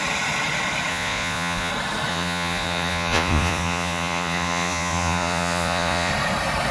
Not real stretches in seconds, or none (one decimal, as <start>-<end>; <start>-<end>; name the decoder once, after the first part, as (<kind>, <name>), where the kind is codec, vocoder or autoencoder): 0.9-1.7 (vocoder, Vocos); 2.1-6.1